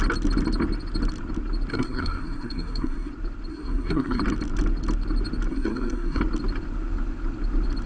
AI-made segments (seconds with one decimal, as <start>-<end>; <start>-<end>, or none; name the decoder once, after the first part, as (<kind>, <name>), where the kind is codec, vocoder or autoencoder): 1.7-3.1 (codec, SNAC); 3.5-4.2; 5.5-6.2